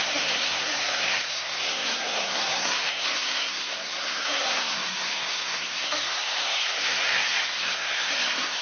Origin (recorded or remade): remade